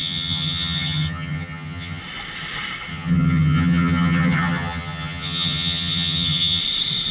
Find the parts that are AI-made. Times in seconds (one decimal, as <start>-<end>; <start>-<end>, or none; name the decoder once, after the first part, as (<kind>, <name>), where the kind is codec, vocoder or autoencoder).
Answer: 0.0-2.0 (vocoder, HiFi-GAN); 2.9-6.6